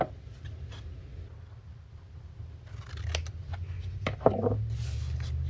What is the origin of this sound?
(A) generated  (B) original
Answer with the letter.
B